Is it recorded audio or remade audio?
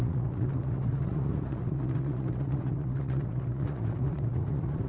remade